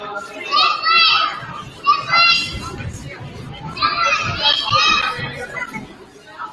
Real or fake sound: real